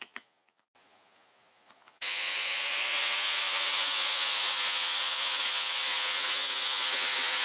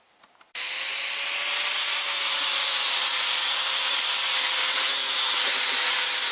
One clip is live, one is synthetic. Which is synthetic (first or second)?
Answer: first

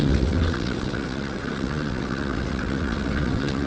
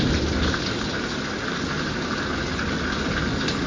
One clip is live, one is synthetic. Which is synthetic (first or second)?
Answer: first